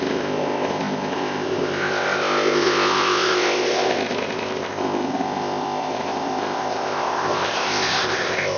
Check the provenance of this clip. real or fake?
fake